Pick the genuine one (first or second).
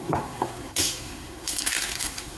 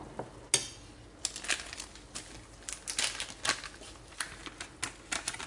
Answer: second